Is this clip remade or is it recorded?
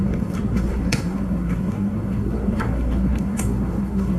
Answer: remade